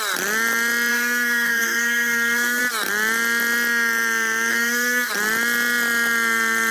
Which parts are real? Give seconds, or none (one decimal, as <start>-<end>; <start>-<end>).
0.0-0.9; 2.6-4.5; 5.1-6.7